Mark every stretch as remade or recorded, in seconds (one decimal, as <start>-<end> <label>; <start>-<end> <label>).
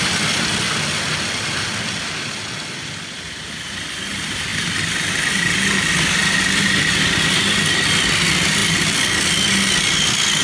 0.0-8.6 recorded; 8.6-9.5 remade; 9.5-10.4 recorded